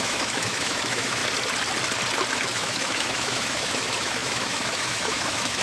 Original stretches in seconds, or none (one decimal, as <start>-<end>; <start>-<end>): 1.2-2.3